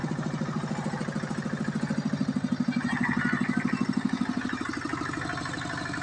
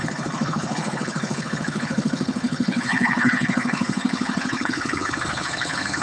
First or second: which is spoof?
second